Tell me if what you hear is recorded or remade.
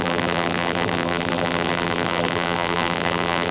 remade